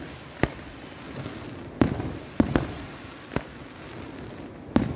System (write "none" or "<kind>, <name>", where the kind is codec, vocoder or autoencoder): none